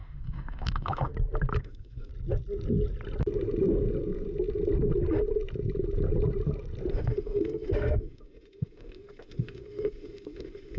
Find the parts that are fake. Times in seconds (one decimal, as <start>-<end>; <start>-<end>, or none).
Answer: 0.0-1.1; 1.6-2.1; 6.9-10.8